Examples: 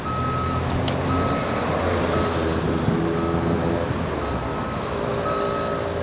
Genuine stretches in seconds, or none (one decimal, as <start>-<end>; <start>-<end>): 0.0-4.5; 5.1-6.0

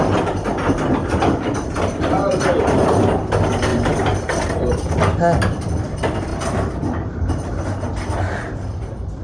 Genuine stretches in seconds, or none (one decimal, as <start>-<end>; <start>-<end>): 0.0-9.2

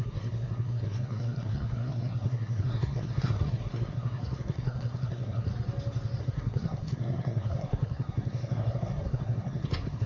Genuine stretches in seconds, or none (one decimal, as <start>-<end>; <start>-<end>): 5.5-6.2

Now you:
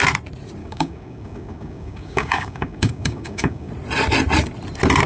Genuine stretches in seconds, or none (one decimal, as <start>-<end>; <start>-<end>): 0.0-0.6; 3.7-5.1

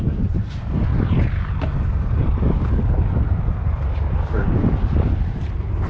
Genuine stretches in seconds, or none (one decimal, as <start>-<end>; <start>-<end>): 0.9-1.5

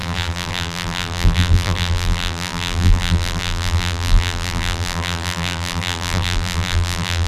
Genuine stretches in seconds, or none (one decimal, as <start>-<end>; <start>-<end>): none